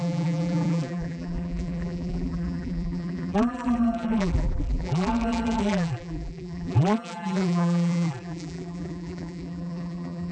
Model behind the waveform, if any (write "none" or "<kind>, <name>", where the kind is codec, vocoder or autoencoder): vocoder, BigVGAN v2